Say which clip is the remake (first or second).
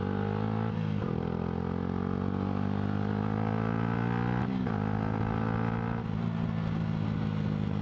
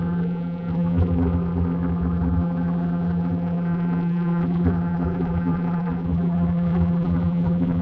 second